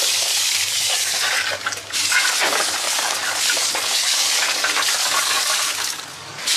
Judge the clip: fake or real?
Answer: fake